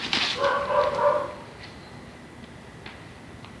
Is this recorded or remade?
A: recorded